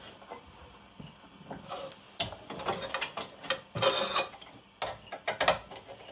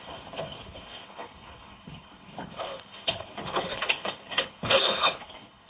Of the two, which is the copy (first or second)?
second